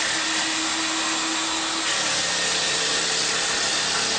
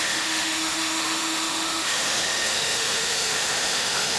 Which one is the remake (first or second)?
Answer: second